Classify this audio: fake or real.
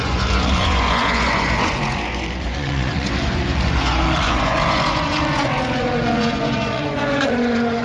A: fake